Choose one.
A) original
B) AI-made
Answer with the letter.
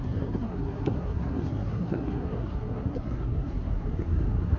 B